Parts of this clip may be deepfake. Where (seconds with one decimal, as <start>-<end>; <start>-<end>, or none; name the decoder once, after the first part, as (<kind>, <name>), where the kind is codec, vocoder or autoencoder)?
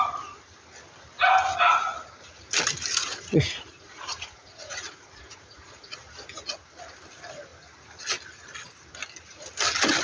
3.0-5.9 (vocoder, Vocos)